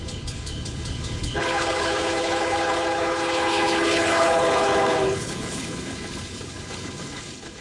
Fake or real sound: fake